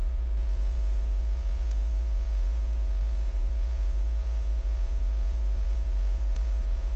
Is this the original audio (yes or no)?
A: no